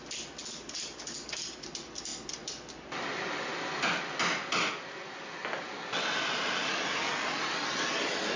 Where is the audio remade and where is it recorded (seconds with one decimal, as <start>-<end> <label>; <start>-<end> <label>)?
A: 0.0-8.4 recorded